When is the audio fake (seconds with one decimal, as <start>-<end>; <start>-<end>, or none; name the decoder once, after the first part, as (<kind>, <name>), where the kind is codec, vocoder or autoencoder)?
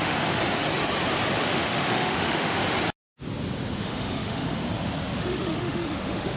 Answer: 0.0-0.4 (autoencoder, DAC-VAE); 1.4-2.6; 3.8-4.6; 5.2-6.4